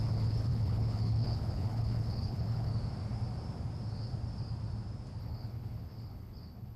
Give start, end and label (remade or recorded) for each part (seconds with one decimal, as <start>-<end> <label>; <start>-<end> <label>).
0.0-2.7 remade; 2.7-5.2 recorded; 5.2-6.8 remade